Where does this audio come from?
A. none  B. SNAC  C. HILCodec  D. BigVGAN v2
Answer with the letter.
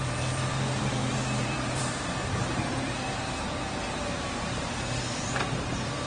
D